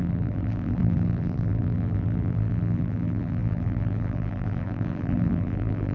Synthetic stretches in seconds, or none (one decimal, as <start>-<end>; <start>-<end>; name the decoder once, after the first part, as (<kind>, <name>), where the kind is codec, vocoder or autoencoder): 0.0-5.9 (vocoder, BigVGAN v2)